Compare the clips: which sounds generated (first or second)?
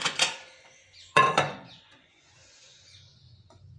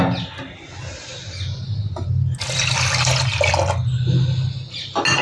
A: first